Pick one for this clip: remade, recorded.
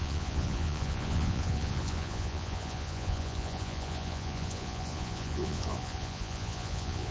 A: remade